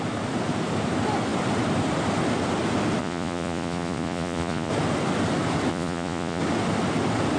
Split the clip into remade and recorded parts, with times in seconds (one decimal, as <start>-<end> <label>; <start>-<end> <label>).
0.0-3.0 recorded; 3.0-4.7 remade; 4.7-5.7 recorded; 5.7-6.4 remade; 6.4-7.4 recorded